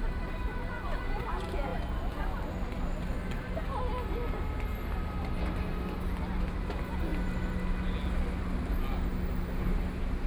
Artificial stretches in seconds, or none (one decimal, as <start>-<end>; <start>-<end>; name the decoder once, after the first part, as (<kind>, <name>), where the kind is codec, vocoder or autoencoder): none